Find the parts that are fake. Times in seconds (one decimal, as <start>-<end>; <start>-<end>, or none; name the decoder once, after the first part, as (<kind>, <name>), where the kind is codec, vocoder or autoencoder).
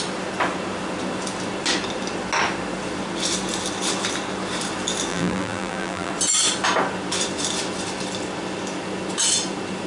5.1-6.1 (vocoder, BigVGAN v2)